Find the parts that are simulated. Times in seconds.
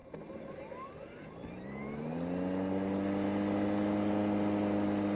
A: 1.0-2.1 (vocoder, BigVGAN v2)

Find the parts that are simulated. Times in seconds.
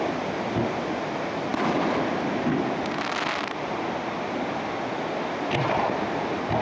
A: none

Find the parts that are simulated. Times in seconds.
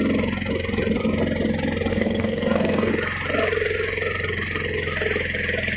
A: 1.9-2.9 (codec, SNAC)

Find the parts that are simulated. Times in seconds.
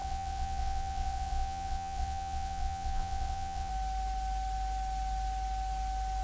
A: 0.0-3.7 (vocoder, WaveNeXt)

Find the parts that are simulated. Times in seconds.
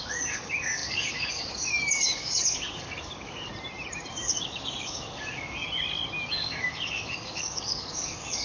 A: 0.0-3.5 (codec, DAC); 4.1-5.6; 6.3-8.4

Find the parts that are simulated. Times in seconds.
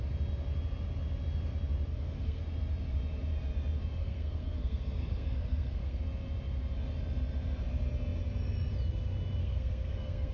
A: 1.9-2.4 (codec, SNAC); 4.0-6.0; 9.4-10.3